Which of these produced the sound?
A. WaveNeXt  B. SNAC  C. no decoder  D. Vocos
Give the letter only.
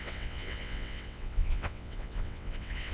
A